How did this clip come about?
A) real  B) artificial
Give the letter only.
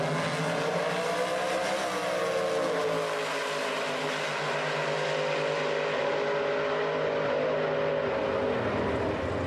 A